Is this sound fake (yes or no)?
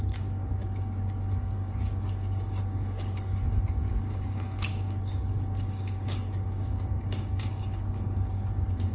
yes